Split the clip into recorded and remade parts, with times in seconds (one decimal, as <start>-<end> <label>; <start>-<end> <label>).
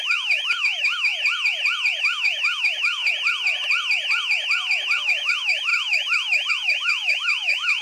0.0-1.1 remade; 1.1-2.0 recorded; 2.0-3.0 remade; 3.0-5.0 recorded; 5.0-7.8 remade